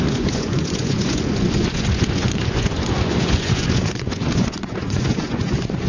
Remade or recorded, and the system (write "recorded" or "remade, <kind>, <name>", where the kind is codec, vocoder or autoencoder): remade, vocoder, Vocos